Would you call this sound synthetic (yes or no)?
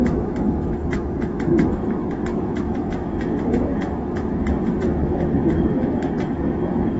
yes